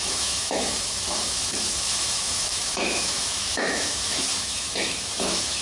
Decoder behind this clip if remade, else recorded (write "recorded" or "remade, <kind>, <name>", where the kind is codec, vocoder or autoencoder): remade, autoencoder, DAC-VAE